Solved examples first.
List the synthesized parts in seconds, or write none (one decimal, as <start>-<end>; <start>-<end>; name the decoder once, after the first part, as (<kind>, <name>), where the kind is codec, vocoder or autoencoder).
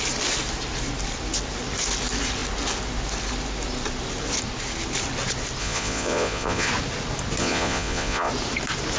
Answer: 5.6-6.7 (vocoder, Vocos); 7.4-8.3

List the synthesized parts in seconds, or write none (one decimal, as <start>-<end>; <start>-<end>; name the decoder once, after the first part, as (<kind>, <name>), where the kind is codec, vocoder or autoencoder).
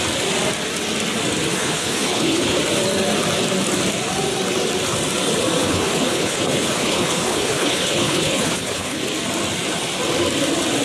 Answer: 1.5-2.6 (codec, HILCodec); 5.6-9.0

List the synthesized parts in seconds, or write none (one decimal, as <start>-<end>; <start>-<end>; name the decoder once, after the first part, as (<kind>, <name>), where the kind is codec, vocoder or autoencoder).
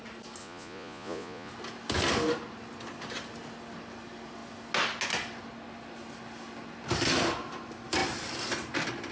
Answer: 0.4-1.5 (vocoder, Vocos)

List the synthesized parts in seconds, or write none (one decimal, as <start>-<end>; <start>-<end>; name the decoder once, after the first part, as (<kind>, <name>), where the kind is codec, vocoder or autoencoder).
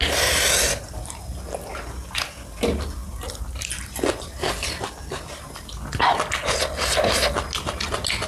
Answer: none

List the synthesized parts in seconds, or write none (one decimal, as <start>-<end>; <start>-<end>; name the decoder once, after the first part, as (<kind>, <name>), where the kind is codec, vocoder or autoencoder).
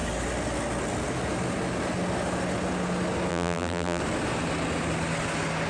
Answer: 3.3-4.0 (vocoder, BigVGAN v2)